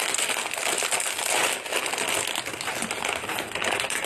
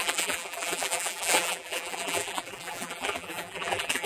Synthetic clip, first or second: second